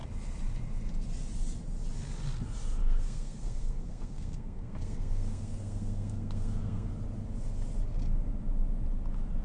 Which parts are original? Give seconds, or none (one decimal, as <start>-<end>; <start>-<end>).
0.0-2.8; 6.9-9.4